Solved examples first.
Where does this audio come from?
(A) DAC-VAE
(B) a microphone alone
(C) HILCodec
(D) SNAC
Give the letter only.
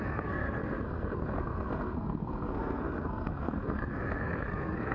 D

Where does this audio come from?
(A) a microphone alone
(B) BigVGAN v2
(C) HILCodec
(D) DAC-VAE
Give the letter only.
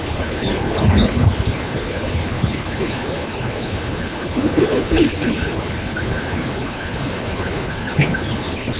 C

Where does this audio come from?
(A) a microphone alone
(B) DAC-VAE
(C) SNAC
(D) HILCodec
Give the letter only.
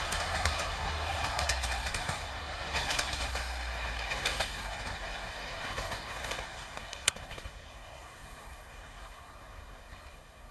C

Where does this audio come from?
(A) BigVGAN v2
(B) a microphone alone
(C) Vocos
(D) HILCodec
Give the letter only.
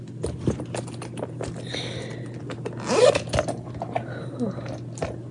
B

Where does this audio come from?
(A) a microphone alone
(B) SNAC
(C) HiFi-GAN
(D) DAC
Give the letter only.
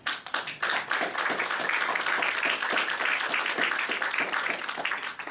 A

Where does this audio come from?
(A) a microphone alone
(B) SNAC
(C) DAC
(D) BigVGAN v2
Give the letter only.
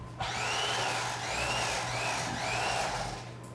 A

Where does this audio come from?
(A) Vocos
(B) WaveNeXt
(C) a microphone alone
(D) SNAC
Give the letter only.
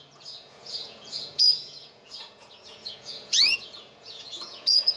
A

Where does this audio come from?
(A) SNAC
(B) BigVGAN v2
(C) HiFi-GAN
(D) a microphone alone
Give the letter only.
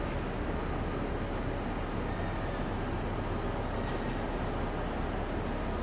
D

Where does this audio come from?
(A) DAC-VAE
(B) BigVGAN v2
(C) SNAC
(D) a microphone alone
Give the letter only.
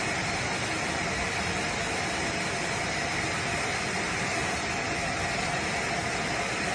D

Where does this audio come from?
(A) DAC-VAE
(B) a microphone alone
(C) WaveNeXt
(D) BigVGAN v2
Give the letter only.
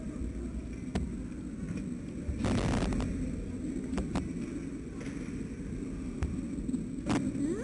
B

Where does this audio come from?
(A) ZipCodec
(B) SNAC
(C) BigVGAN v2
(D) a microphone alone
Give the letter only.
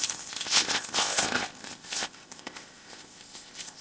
A